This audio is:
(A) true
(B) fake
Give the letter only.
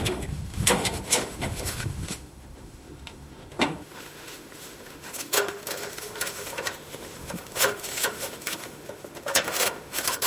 B